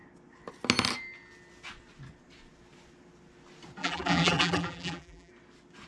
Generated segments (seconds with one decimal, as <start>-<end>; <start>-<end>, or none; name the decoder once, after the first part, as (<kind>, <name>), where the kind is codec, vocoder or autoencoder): 3.8-5.3 (vocoder, BigVGAN v2)